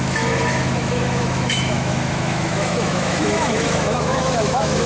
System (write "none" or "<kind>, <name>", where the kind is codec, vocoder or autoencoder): autoencoder, DAC-VAE